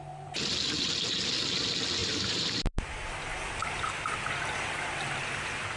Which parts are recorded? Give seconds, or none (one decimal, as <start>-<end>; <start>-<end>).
0.0-2.0; 2.7-5.8